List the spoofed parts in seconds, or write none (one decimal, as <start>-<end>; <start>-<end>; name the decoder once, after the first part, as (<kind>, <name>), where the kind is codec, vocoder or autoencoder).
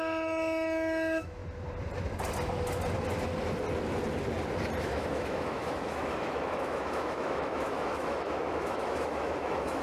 0.0-1.4 (autoencoder, DAC-VAE); 4.8-9.8